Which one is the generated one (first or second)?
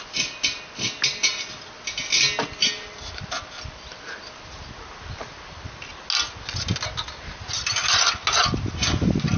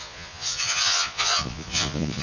second